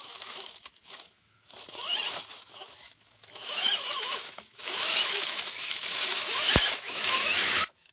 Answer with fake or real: fake